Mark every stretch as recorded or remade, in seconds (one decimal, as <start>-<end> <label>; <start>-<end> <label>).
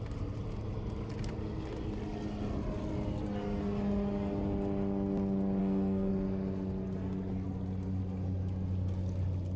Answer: 0.0-5.6 recorded; 5.6-6.1 remade; 6.1-9.6 recorded